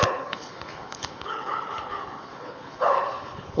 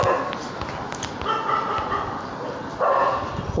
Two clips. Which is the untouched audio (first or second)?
second